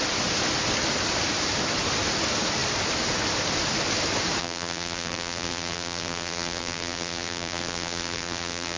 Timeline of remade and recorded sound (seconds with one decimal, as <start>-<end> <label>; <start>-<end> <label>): 0.0-4.4 recorded; 4.4-8.8 remade